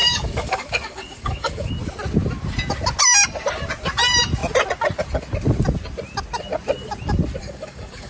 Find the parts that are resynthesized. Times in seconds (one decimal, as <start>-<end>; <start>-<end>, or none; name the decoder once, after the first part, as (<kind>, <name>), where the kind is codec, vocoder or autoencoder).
0.0-1.7 (codec, DAC); 7.4-8.1